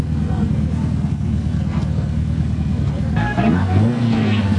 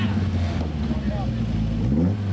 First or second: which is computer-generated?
first